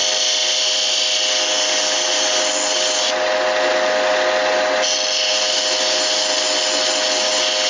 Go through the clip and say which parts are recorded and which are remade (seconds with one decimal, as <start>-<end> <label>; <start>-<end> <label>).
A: 0.0-7.7 recorded